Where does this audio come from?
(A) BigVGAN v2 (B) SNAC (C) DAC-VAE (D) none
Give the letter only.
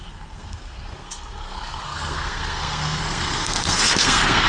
B